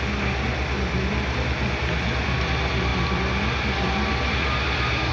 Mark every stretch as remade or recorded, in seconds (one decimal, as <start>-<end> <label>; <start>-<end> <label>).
0.0-5.1 recorded